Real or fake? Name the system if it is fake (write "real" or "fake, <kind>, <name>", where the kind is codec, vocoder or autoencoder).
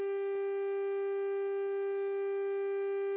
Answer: real